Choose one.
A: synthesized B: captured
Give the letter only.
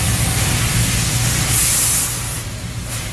B